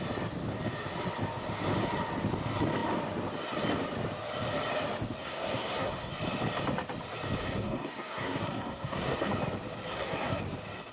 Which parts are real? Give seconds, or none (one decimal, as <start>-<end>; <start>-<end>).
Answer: 0.0-5.2; 6.1-7.4; 9.3-9.9; 10.4-10.9